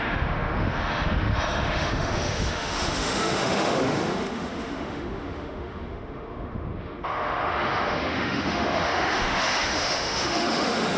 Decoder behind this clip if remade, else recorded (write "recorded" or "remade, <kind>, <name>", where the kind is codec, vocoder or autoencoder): remade, autoencoder, DAC-VAE